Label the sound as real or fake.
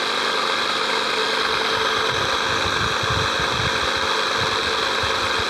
real